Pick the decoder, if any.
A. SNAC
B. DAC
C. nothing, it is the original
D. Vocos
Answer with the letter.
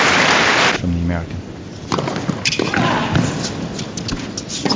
C